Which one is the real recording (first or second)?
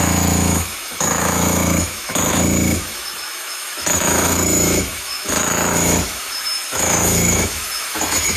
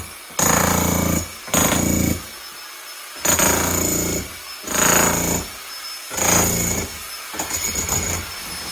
second